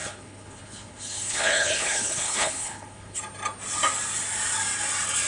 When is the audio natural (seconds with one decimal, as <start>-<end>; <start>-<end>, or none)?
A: 3.2-5.3